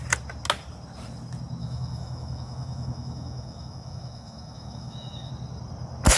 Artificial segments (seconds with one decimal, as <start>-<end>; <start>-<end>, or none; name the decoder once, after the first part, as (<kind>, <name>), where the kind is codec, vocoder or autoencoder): 1.6-5.3 (autoencoder, DAC-VAE)